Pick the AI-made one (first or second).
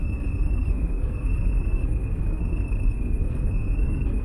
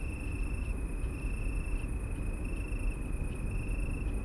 first